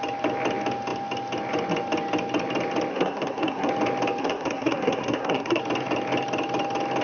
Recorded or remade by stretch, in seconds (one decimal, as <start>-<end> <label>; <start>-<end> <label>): 0.0-2.9 recorded; 2.9-3.7 remade; 3.7-4.2 recorded; 4.2-5.6 remade; 5.6-7.0 recorded